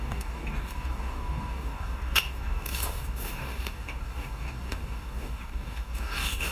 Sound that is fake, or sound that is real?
fake